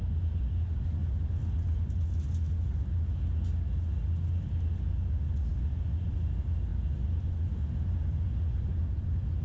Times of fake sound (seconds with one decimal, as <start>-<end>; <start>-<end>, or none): none